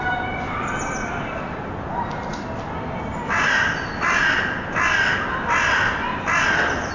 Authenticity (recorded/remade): recorded